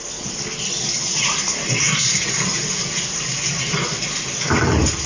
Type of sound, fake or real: real